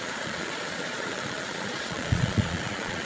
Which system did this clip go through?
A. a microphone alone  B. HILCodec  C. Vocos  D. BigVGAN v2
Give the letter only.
C